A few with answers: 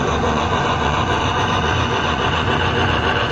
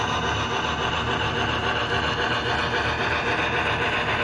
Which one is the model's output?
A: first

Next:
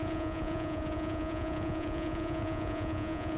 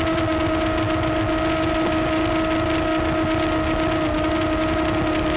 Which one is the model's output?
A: first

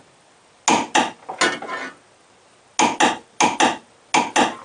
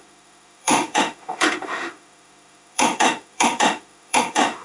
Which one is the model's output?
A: second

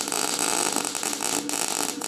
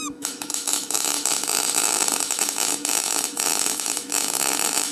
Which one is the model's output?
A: second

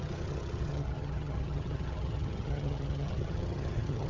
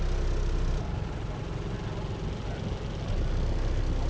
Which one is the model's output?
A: first